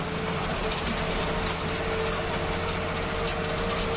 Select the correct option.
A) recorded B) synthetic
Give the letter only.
A